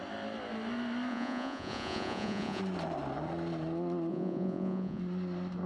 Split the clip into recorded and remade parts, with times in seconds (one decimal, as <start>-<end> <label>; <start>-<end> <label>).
0.0-1.1 recorded; 1.1-2.6 remade; 2.6-4.1 recorded; 4.1-5.0 remade; 5.0-5.7 recorded